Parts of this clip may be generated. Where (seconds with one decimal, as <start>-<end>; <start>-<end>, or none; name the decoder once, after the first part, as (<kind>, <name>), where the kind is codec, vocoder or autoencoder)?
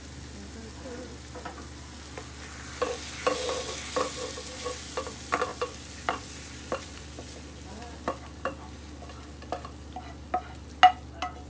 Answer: 5.5-7.0 (vocoder, BigVGAN v2)